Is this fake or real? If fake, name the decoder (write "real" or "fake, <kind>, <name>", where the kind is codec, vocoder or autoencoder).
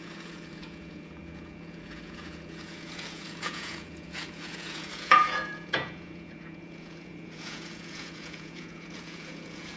fake, vocoder, Vocos